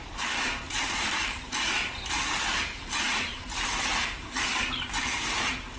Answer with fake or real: fake